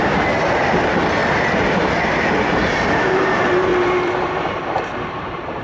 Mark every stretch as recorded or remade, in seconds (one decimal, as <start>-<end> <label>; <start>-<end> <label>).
0.0-1.2 remade; 1.2-2.1 recorded; 2.1-5.6 remade